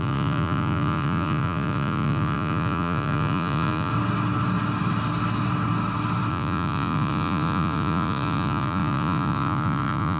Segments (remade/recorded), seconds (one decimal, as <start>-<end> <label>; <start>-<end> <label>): 0.0-3.9 remade; 3.9-6.3 recorded; 6.3-10.2 remade